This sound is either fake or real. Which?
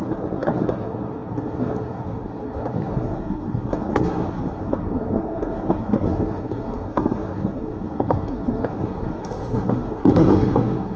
fake